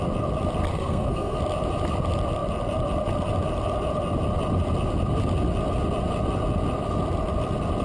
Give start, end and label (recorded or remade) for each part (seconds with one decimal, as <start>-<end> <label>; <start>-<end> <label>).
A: 0.0-0.7 recorded; 0.7-1.4 remade; 1.4-7.8 recorded